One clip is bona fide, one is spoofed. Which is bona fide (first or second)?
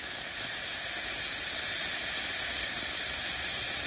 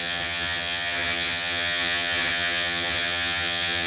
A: first